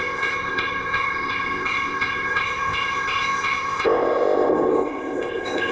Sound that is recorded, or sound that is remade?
remade